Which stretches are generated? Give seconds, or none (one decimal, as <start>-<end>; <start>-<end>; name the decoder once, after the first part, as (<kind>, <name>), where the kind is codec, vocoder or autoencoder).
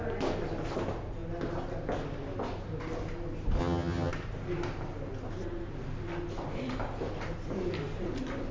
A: 3.6-4.1 (vocoder, HiFi-GAN)